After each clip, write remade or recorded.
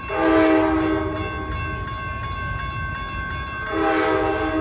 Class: recorded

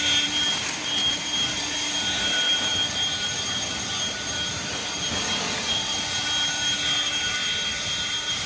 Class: remade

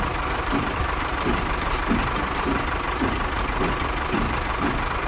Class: remade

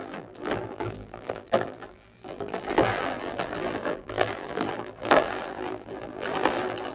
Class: remade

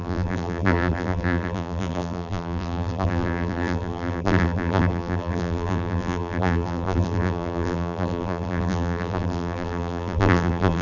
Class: remade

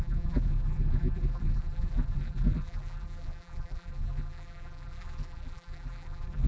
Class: remade